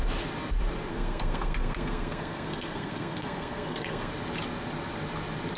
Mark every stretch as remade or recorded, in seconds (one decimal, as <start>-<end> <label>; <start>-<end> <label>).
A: 0.0-0.9 recorded; 0.9-4.1 remade; 4.1-5.6 recorded